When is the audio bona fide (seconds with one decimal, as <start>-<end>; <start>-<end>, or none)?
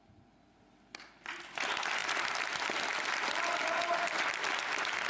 0.0-5.1